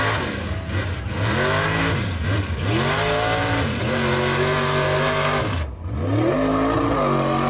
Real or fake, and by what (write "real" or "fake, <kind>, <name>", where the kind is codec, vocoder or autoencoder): real